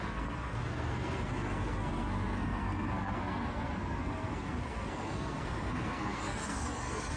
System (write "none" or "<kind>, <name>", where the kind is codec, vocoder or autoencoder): codec, SNAC